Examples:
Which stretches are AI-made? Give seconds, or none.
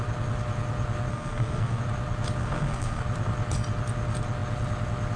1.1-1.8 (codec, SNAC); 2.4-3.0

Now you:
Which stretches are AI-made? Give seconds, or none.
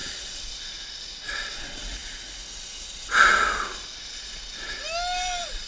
none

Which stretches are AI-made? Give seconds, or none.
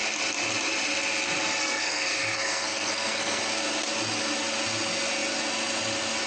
1.6-3.4 (codec, SNAC)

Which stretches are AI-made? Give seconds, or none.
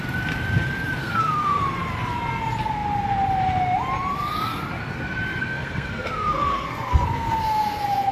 1.0-1.6 (codec, SNAC); 5.4-8.1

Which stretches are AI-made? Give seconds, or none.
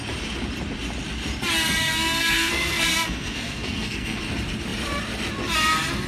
1.9-4.2 (codec, SNAC)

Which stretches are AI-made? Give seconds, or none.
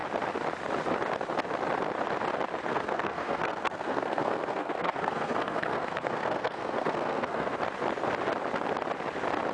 2.7-7.6 (codec, SNAC)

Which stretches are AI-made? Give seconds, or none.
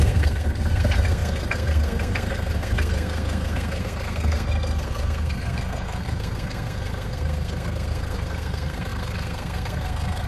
0.0-10.3 (codec, SNAC)